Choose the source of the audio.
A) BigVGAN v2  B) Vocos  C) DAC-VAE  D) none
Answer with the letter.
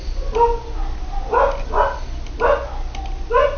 D